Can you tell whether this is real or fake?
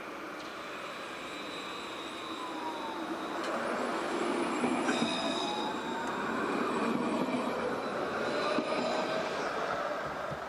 real